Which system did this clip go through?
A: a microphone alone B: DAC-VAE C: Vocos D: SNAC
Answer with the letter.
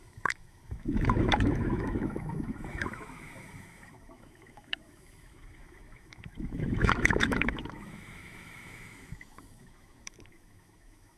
B